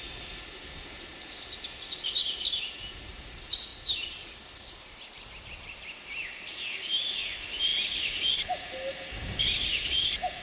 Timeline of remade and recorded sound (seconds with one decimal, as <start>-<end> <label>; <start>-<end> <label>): 0.0-10.4 recorded